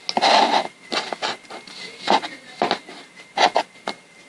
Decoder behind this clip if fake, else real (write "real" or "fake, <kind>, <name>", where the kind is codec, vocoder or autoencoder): real